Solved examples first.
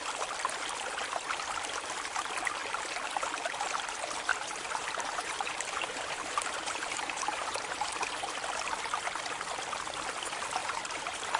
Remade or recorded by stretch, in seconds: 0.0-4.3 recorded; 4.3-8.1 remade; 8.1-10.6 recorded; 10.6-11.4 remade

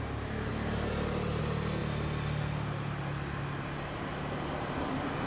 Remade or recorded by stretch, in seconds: 0.0-5.3 recorded

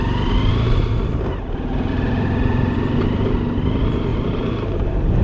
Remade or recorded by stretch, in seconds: 0.0-0.5 recorded; 0.5-1.9 remade; 1.9-4.1 recorded; 4.1-5.2 remade

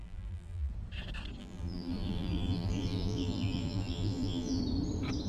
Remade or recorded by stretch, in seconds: 0.0-0.7 remade; 0.7-1.4 recorded; 1.4-4.6 remade; 4.6-5.3 recorded

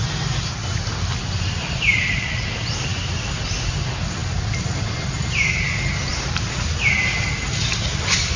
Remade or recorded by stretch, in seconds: 0.0-2.9 recorded; 2.9-3.7 remade; 3.7-6.1 recorded; 6.1-6.8 remade; 6.8-8.4 recorded

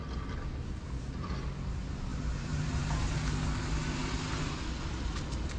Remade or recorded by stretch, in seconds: 0.0-2.1 recorded; 2.1-3.4 remade; 3.4-5.6 recorded